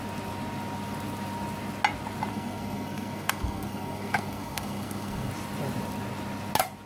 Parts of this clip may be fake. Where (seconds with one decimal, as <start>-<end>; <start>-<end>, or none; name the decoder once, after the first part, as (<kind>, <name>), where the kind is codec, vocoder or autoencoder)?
2.3-5.3 (codec, SNAC)